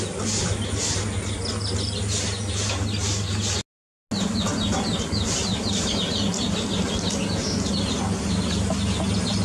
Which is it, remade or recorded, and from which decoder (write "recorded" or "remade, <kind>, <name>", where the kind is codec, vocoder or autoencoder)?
recorded